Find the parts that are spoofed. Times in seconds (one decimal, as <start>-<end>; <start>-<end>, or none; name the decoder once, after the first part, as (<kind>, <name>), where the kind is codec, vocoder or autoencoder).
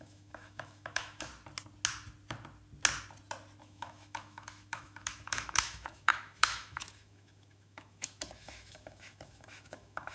0.0-1.3 (autoencoder, DAC-VAE); 3.6-10.1